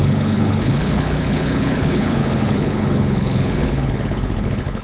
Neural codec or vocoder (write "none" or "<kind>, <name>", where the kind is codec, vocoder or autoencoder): codec, HILCodec